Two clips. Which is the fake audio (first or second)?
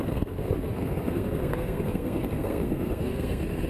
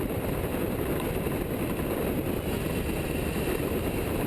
first